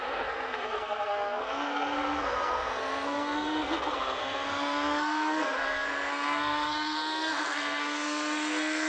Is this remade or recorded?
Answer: remade